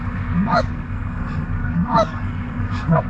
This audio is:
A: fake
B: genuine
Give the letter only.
A